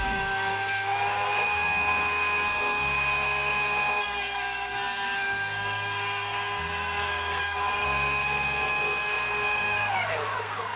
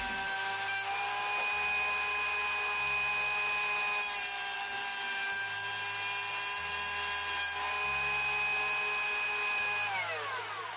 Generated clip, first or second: first